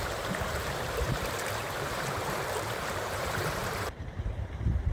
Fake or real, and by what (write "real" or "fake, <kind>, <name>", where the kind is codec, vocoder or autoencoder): fake, vocoder, BigVGAN v2